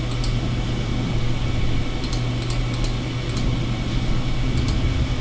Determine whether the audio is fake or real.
real